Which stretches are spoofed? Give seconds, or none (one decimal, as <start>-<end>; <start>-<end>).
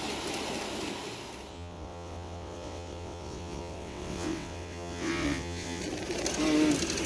1.5-5.8